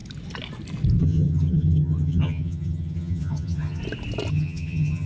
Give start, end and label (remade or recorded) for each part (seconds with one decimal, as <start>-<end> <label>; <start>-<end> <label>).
0.0-1.0 recorded; 1.0-3.8 remade; 3.8-4.3 recorded; 4.3-5.1 remade